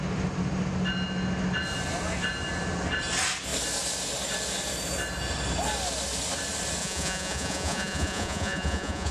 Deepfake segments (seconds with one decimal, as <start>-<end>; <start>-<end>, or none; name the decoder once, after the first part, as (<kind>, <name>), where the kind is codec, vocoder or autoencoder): 6.8-9.1 (vocoder, Vocos)